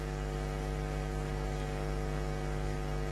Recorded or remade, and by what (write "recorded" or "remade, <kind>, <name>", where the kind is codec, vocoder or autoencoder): remade, codec, DAC